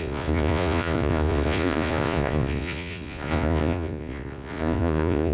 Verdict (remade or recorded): remade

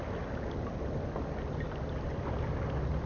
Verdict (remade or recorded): recorded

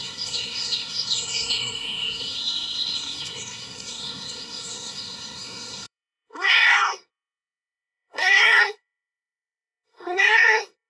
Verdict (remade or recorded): remade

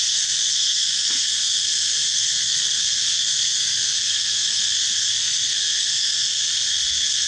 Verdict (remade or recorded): remade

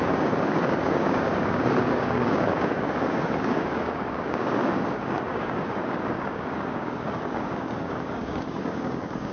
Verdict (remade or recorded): remade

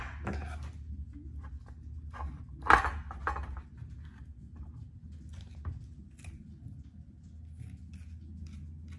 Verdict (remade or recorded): recorded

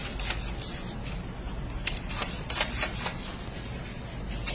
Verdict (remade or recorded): recorded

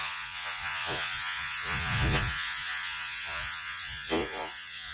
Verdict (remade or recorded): remade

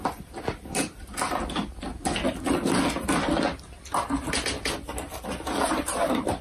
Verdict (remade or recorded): recorded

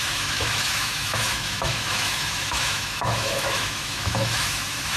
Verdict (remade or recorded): remade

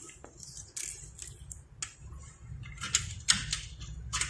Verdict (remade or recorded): recorded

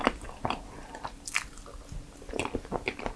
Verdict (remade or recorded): recorded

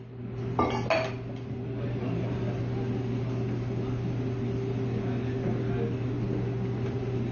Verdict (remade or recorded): recorded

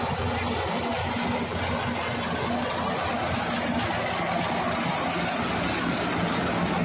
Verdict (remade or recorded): recorded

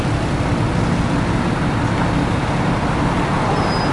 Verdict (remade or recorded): recorded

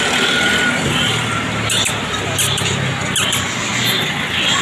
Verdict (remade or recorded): recorded